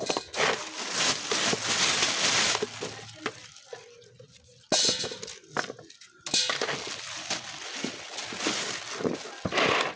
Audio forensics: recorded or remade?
recorded